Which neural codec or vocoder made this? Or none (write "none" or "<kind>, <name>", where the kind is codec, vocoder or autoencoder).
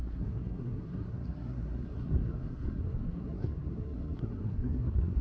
codec, SNAC